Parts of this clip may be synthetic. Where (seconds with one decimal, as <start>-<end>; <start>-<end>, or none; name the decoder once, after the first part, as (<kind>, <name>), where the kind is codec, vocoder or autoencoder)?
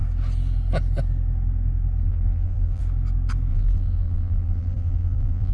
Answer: 2.0-2.8 (vocoder, BigVGAN v2); 3.5-5.5